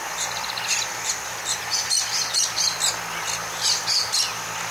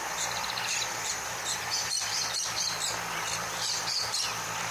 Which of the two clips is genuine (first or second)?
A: first